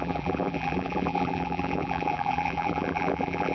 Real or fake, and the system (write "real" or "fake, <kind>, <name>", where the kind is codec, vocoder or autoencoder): fake, vocoder, BigVGAN v2